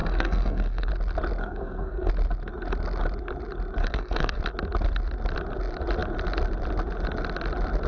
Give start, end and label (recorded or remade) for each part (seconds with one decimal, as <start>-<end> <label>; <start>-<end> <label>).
0.0-0.9 remade; 0.9-1.4 recorded; 1.4-2.1 remade; 2.1-3.8 recorded; 3.8-4.4 remade; 4.4-7.9 recorded